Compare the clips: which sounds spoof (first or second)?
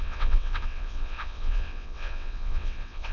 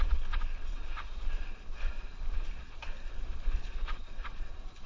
first